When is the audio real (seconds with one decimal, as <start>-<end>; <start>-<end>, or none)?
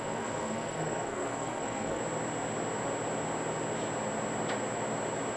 2.0-5.4